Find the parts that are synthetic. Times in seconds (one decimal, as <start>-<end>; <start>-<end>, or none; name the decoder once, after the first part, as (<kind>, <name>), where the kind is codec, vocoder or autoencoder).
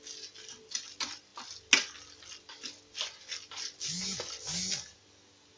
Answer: none